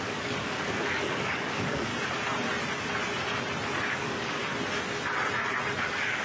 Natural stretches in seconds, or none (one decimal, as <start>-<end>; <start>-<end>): 1.9-3.9; 4.4-5.8